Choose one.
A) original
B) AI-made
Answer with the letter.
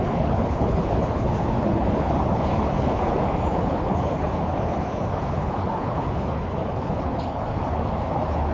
B